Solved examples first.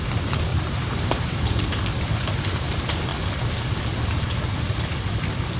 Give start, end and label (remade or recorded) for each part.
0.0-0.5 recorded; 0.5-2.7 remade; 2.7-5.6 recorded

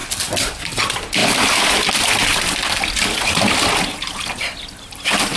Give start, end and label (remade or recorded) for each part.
0.0-0.6 remade; 0.6-5.4 recorded